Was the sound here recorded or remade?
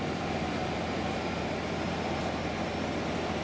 recorded